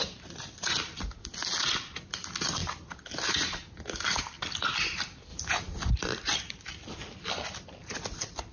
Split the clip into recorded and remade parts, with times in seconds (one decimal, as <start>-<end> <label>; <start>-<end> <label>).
0.0-1.4 remade; 1.4-2.1 recorded; 2.1-8.5 remade